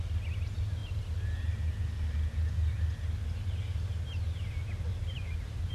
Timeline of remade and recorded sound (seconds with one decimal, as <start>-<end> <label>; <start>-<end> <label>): 0.0-4.9 recorded; 4.9-5.7 remade

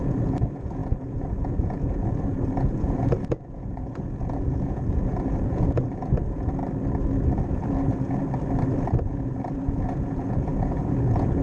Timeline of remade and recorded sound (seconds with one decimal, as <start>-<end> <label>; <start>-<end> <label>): 0.0-6.6 remade; 6.6-7.5 recorded; 7.5-8.2 remade; 8.2-8.9 recorded; 8.9-11.4 remade

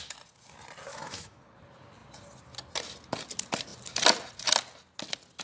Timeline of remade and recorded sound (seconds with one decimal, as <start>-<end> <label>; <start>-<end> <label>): 0.0-0.9 recorded; 0.9-1.4 remade; 1.4-5.4 recorded

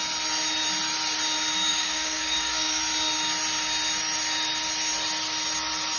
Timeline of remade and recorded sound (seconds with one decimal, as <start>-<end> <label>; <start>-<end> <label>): 0.0-1.7 recorded; 1.7-2.8 remade; 2.8-6.0 recorded

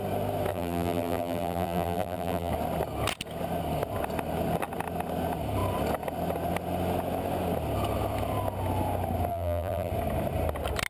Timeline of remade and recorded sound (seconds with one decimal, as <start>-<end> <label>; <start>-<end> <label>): 0.0-0.5 recorded; 0.5-2.5 remade; 2.5-9.3 recorded; 9.3-9.9 remade; 9.9-10.9 recorded

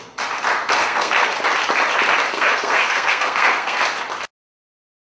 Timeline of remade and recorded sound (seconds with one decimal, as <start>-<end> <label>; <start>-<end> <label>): 0.0-0.8 recorded; 0.8-1.3 remade; 1.3-2.3 recorded; 2.3-3.8 remade; 3.8-5.0 recorded

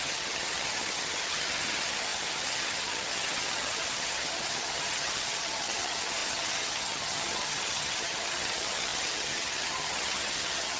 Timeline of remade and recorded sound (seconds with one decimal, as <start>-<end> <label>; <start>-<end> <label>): 0.0-10.8 remade